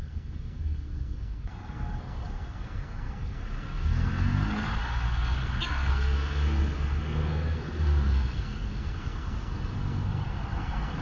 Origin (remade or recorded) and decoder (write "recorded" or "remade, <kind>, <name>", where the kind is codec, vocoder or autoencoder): remade, codec, SNAC